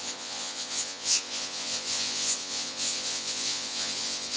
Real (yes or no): no